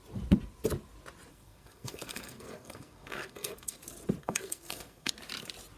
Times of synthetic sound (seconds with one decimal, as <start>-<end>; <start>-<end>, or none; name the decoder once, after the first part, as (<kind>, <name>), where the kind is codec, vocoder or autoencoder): 1.3-3.8 (codec, SNAC); 4.2-5.1